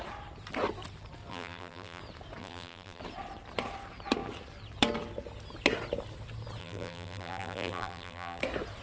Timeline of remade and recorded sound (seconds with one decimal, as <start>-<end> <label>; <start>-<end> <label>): 0.0-1.3 recorded; 1.3-2.0 remade; 2.0-2.4 recorded; 2.4-3.0 remade; 3.0-6.6 recorded; 6.6-8.4 remade; 8.4-8.8 recorded

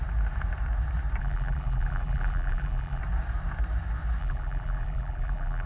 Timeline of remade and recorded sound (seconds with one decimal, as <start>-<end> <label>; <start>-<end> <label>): 0.0-1.2 recorded; 1.2-3.0 remade; 3.0-4.2 recorded; 4.2-5.7 remade